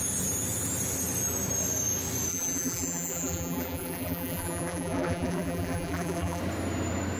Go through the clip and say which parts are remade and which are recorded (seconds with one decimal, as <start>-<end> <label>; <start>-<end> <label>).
0.0-2.3 recorded; 2.3-6.4 remade; 6.4-7.2 recorded